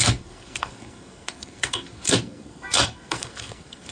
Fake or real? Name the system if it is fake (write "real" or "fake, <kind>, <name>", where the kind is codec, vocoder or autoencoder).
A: fake, codec, SNAC